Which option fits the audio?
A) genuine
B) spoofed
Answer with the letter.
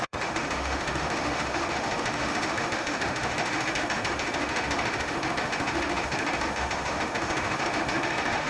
B